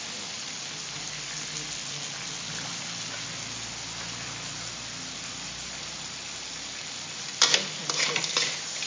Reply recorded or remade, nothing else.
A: recorded